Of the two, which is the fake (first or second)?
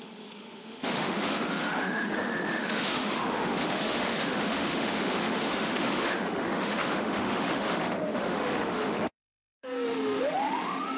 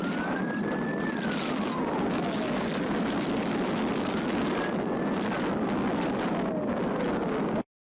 first